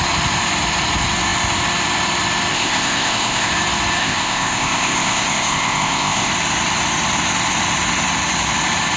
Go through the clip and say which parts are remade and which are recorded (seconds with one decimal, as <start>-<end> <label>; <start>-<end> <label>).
0.0-2.5 recorded; 2.5-3.5 remade; 3.5-4.0 recorded; 4.0-6.3 remade; 6.3-9.0 recorded